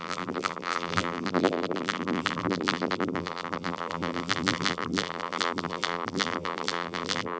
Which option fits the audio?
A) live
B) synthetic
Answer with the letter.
B